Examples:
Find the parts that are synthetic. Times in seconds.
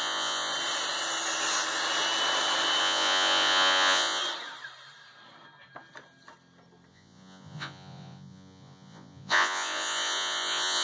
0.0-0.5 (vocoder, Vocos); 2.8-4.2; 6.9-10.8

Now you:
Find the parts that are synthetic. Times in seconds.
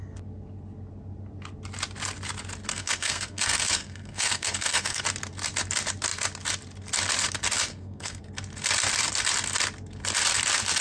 2.7-5.0 (codec, SNAC); 7.7-8.2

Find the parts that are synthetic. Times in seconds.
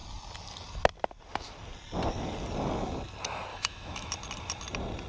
3.5-4.1 (autoencoder, DAC-VAE)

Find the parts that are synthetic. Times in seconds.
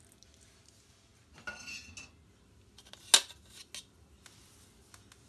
none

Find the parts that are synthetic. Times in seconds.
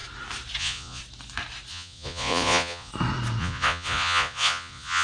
0.6-1.0 (vocoder, Vocos); 1.7-2.9; 3.4-5.0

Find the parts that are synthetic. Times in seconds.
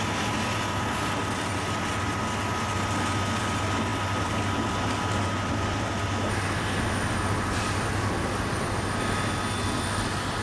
none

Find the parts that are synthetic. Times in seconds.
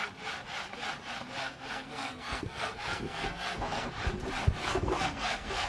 1.4-3.9 (codec, SNAC); 4.6-5.7